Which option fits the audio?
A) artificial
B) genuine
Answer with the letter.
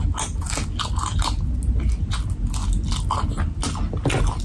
B